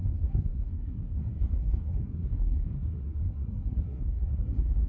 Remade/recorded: remade